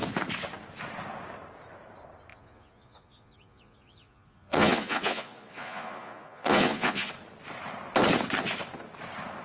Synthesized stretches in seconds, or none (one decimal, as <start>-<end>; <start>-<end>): 2.3-7.1